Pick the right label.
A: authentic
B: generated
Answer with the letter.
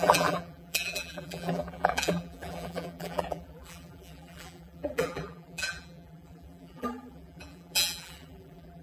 B